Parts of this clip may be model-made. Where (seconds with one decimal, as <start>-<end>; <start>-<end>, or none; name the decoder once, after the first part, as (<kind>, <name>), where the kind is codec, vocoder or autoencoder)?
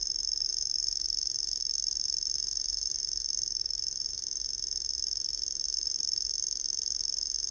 0.0-7.5 (autoencoder, DAC-VAE)